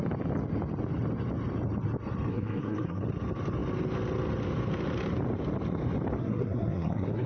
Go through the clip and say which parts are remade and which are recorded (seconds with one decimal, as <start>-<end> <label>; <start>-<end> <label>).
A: 0.0-2.3 recorded; 2.3-3.0 remade; 3.0-6.2 recorded; 6.2-7.3 remade

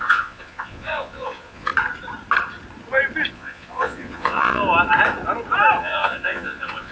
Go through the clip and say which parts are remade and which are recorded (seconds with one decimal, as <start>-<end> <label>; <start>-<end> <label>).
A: 0.0-1.7 remade; 1.7-3.3 recorded; 3.3-4.6 remade; 4.6-5.8 recorded; 5.8-6.9 remade

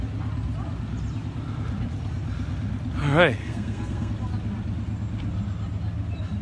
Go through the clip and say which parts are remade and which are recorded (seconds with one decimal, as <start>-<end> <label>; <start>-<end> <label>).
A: 0.0-3.4 recorded; 3.4-4.1 remade; 4.1-6.4 recorded

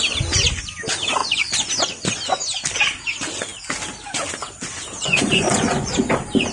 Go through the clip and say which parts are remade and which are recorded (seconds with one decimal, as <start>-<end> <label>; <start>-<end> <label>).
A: 0.0-1.2 recorded; 1.2-1.7 remade; 1.7-5.0 recorded; 5.0-6.0 remade; 6.0-6.5 recorded

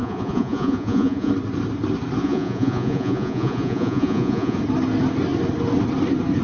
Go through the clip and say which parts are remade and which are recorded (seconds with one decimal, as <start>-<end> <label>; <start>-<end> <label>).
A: 0.0-1.3 remade; 1.3-2.2 recorded; 2.2-4.6 remade; 4.6-6.4 recorded

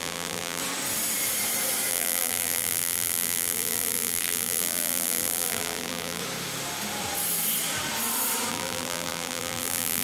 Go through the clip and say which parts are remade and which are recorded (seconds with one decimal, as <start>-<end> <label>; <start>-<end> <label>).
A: 0.0-0.6 remade; 0.6-1.9 recorded; 1.9-6.2 remade; 6.2-8.5 recorded; 8.5-10.0 remade

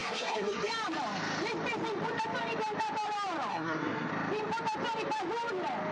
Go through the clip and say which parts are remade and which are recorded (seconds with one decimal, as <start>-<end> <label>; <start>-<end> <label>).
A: 0.0-0.7 remade; 0.7-3.5 recorded; 3.5-4.1 remade; 4.1-5.9 recorded